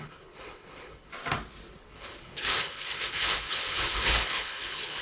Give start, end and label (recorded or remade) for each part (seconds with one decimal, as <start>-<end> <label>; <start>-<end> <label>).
0.0-1.1 remade; 1.1-1.8 recorded; 1.8-5.0 remade